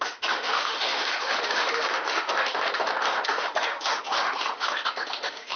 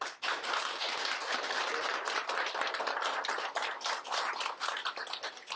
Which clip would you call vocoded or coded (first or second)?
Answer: first